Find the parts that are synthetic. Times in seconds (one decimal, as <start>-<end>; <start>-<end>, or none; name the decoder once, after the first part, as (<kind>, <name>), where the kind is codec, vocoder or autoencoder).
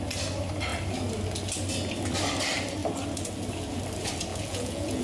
4.3-5.0 (vocoder, Vocos)